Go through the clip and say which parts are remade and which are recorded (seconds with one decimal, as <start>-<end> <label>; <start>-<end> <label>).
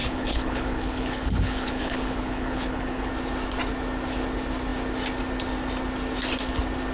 0.0-3.1 remade; 3.1-6.9 recorded